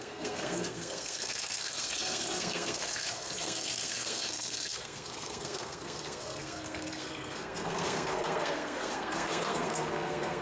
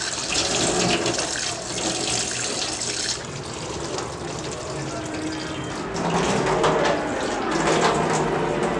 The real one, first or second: second